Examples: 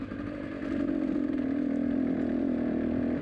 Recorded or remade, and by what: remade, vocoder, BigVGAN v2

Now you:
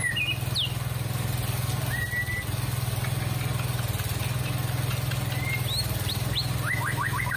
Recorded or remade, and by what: recorded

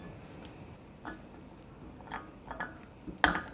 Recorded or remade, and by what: recorded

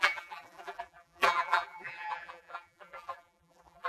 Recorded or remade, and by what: remade, vocoder, BigVGAN v2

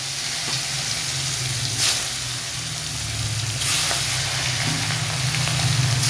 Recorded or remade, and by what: recorded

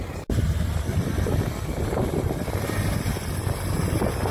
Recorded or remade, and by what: recorded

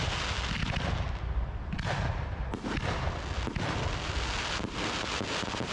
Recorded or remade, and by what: recorded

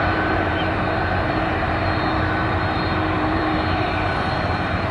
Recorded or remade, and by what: remade, vocoder, BigVGAN v2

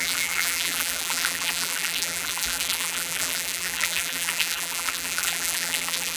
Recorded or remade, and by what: remade, vocoder, BigVGAN v2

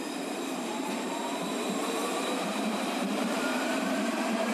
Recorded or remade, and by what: remade, vocoder, BigVGAN v2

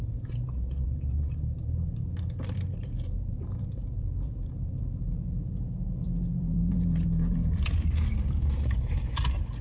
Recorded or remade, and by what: remade, vocoder, BigVGAN v2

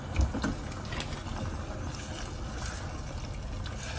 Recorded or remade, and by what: recorded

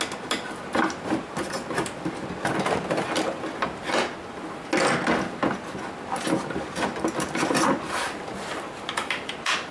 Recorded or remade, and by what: recorded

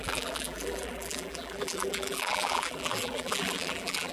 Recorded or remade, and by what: remade, vocoder, BigVGAN v2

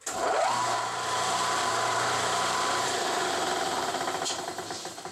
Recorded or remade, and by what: remade, vocoder, BigVGAN v2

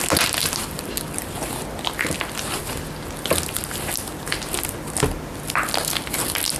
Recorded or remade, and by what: recorded